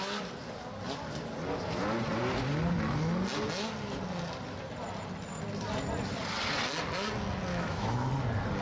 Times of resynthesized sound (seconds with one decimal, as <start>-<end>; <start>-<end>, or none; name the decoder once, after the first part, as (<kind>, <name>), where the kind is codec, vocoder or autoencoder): 7.5-8.1 (autoencoder, DAC-VAE)